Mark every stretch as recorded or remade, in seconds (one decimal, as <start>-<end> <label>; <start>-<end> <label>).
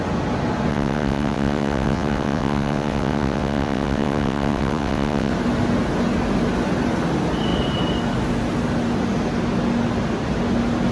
0.0-0.7 recorded; 0.7-5.3 remade; 5.3-10.9 recorded